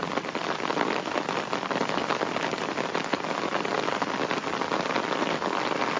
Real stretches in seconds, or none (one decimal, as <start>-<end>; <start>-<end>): 0.0-6.0